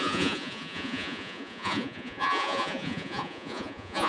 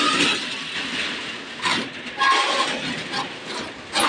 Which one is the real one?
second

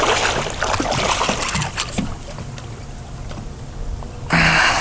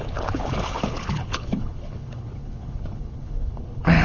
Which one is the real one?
first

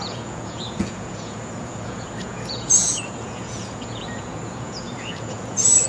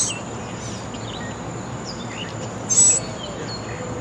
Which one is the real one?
second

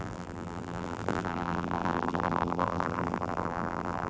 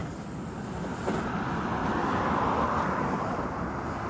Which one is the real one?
second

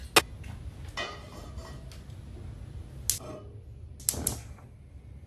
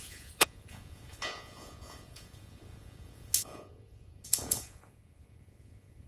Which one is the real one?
first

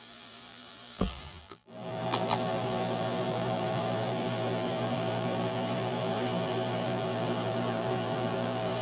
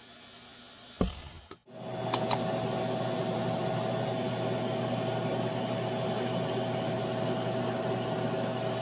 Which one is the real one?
second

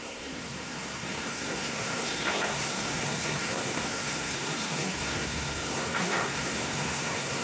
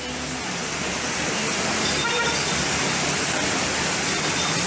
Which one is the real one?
second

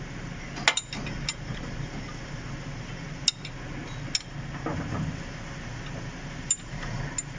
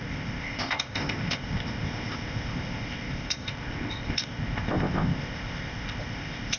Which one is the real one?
first